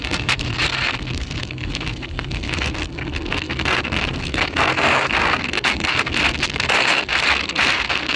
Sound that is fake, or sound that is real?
fake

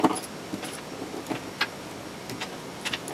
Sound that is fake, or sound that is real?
real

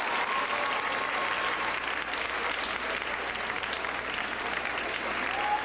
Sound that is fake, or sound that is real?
real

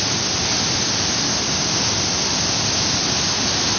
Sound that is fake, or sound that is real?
real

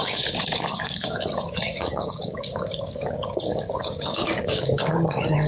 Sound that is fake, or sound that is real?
fake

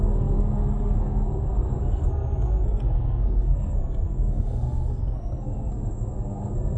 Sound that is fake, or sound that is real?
fake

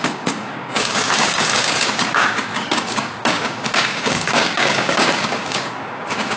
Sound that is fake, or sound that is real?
fake